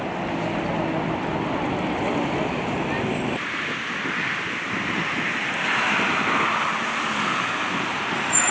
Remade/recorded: recorded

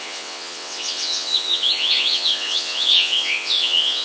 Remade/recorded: remade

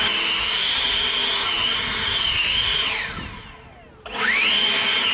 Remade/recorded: recorded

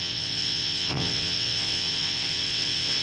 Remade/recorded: remade